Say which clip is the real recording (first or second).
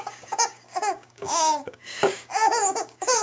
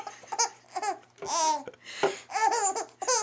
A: second